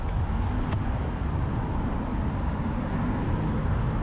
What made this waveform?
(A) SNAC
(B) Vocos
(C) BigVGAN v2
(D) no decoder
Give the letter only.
D